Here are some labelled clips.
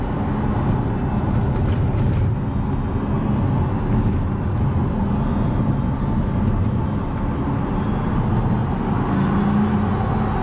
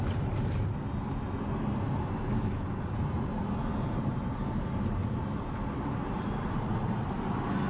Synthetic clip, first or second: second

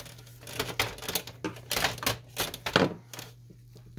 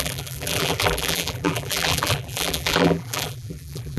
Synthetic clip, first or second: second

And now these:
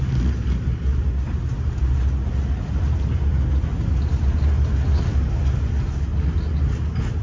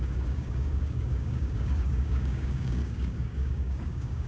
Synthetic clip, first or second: second